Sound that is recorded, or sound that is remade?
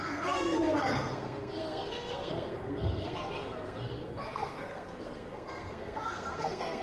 remade